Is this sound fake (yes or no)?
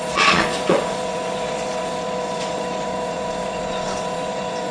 yes